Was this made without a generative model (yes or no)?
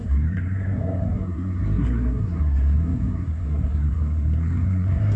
no